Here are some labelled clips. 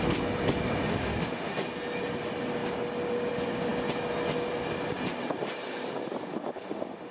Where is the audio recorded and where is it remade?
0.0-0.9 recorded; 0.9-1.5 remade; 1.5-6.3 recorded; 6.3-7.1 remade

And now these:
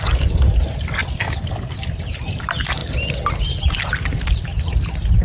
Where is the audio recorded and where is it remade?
0.0-5.2 recorded

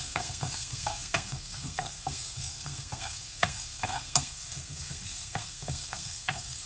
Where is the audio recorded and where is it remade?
0.0-6.7 remade